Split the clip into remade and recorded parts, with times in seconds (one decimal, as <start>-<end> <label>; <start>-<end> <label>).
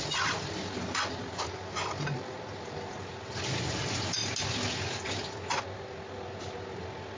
0.0-7.2 recorded